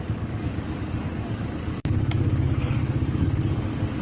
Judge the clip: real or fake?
fake